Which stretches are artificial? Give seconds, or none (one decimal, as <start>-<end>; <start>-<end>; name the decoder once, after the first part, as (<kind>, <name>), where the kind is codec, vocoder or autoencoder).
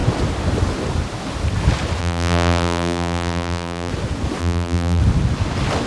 2.0-3.9 (vocoder, BigVGAN v2); 4.4-5.0